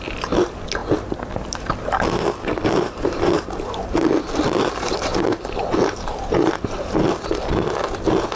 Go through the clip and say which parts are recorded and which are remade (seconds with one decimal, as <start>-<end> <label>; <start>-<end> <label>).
0.0-5.1 recorded; 5.1-6.9 remade; 6.9-8.4 recorded